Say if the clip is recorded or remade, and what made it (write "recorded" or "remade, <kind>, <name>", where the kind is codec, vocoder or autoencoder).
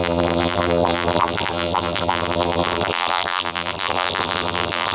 remade, vocoder, BigVGAN v2